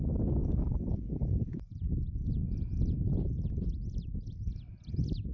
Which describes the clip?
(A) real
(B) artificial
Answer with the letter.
A